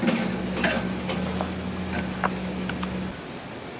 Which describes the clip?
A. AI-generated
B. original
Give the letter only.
B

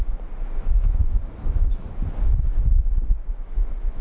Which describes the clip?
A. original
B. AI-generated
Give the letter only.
A